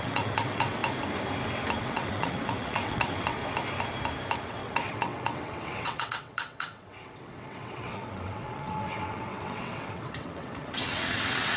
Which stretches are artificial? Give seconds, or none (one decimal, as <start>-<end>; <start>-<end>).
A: 0.0-0.8; 1.8-3.4; 4.5-11.6